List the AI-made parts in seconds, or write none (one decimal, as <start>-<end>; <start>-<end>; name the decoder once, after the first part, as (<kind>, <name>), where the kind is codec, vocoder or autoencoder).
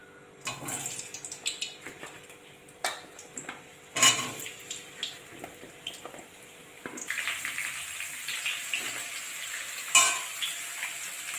none